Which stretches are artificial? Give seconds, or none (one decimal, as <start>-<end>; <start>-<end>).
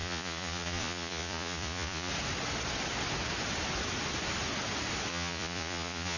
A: 0.0-2.1; 5.1-6.2